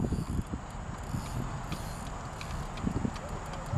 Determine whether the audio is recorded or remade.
recorded